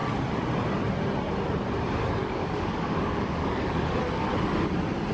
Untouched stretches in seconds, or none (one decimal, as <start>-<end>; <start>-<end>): 0.0-2.2; 4.0-5.1